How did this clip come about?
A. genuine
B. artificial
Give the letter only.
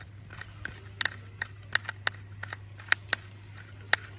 A